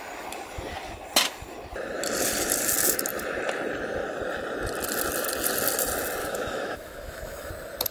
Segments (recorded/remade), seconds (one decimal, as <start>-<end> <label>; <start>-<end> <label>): 0.0-6.2 recorded; 6.2-7.5 remade; 7.5-7.9 recorded

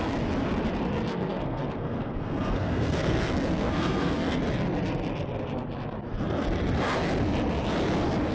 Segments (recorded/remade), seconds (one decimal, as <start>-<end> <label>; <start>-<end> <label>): 0.0-1.1 recorded; 1.1-4.4 remade; 4.4-8.3 recorded

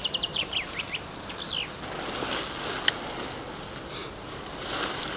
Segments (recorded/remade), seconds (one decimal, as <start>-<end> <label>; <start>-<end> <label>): 0.0-0.8 remade; 0.8-4.0 recorded; 4.0-5.2 remade

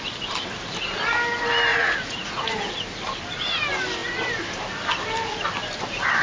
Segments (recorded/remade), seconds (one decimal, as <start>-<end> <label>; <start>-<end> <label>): 0.0-1.7 recorded; 1.7-2.7 remade; 2.7-6.2 recorded

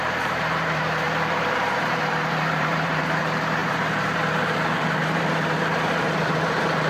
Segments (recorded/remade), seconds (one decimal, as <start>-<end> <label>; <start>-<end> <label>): 0.0-6.9 remade